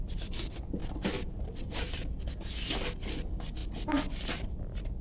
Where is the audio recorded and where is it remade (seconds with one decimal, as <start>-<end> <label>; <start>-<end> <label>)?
0.0-0.8 recorded; 0.8-1.9 remade; 1.9-5.0 recorded

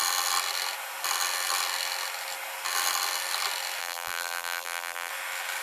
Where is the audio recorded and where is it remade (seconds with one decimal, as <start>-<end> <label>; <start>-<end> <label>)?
0.0-3.8 recorded; 3.8-5.1 remade; 5.1-5.6 recorded

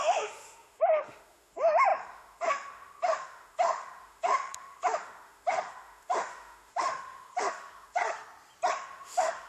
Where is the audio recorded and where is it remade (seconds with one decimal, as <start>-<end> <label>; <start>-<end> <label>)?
0.0-8.0 remade; 8.0-8.7 recorded; 8.7-9.5 remade

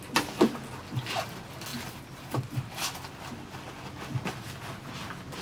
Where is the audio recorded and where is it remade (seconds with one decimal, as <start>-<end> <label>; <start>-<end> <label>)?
0.0-5.4 recorded